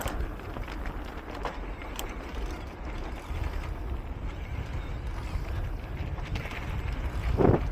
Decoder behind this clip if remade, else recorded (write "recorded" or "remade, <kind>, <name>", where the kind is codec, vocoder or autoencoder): recorded